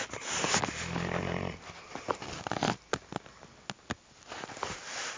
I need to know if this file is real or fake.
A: real